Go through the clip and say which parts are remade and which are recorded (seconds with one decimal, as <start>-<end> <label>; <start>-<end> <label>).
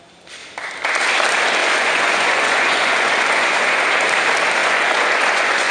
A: 0.0-1.6 recorded; 1.6-3.8 remade; 3.8-4.6 recorded; 4.6-5.7 remade